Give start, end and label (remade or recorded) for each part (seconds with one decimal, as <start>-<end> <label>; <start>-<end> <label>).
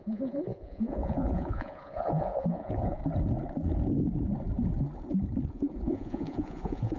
0.0-3.0 remade; 3.0-5.5 recorded; 5.5-7.0 remade